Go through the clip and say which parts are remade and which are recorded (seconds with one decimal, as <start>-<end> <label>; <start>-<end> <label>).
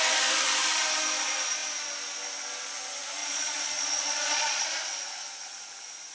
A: 0.0-3.2 recorded; 3.2-4.8 remade; 4.8-6.1 recorded